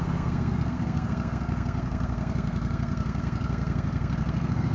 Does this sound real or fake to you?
fake